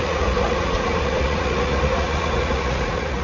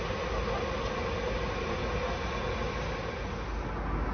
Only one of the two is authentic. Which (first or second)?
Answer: second